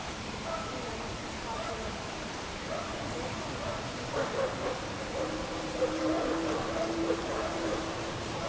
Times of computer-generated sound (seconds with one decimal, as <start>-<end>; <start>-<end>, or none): 0.0-2.9; 4.8-8.5